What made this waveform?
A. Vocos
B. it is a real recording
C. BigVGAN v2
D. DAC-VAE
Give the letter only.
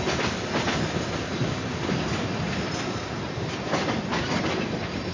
B